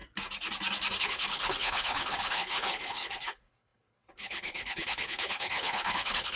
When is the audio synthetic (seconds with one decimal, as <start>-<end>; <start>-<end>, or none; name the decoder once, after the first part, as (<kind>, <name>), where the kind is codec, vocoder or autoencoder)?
1.0-6.4 (codec, HILCodec)

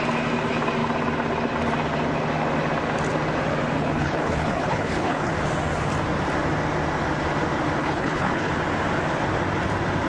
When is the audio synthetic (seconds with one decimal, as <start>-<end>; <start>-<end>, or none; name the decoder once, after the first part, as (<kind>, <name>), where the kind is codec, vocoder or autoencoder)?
3.8-5.3 (codec, HILCodec); 7.8-8.5

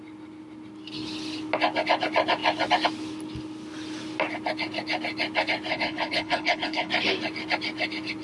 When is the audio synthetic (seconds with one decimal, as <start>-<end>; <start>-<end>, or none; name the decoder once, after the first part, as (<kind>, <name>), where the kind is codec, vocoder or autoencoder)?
5.7-6.9 (codec, HILCodec)

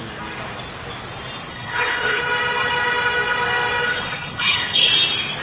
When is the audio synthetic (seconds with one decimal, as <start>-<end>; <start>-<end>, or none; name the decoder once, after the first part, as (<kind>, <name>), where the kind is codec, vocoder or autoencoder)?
1.5-2.2 (codec, HILCodec); 3.9-4.9

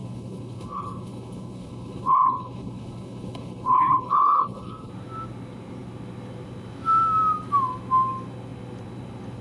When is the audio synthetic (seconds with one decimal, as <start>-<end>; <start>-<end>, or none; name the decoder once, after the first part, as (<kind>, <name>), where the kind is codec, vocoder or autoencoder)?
0.0-4.9 (codec, HILCodec)

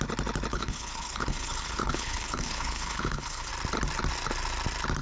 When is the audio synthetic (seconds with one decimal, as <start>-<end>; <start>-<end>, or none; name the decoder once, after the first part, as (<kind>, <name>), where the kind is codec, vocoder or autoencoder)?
0.5-3.5 (codec, HILCodec)

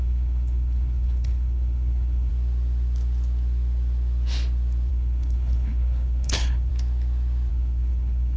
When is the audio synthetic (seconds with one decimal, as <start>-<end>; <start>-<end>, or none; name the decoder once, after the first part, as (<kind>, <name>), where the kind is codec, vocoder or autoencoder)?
0.0-2.3 (codec, HILCodec); 4.9-6.7; 7.5-8.4

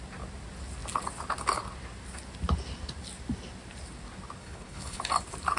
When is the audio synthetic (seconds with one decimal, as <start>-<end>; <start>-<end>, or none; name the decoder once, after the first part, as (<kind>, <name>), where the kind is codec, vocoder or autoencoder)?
4.4-5.0 (codec, HILCodec)